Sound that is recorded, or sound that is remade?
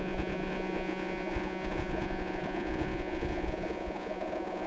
remade